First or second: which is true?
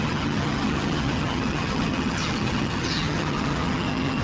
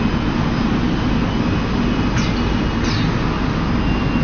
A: second